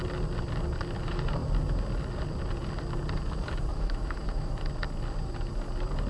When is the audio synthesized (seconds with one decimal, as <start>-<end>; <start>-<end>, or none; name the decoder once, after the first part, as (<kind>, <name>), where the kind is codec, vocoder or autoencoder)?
3.7-4.7 (autoencoder, DAC-VAE)